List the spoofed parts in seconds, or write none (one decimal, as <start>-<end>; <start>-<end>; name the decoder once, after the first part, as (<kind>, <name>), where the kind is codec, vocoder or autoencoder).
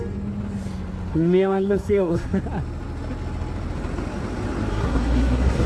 1.1-2.4 (codec, SNAC); 4.7-5.7